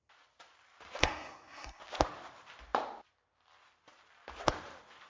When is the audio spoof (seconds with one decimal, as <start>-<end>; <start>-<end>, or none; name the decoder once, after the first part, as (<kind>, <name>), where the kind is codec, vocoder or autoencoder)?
1.0-1.8 (codec, SNAC)